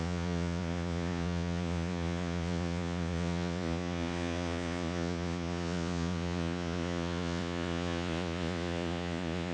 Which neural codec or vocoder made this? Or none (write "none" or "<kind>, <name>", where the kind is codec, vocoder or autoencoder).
vocoder, Vocos